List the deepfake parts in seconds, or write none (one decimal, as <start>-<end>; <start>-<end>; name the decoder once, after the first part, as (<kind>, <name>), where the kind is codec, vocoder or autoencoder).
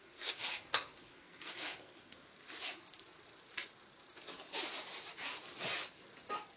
0.0-2.3 (codec, SNAC)